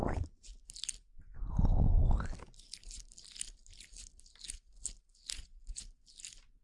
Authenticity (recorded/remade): recorded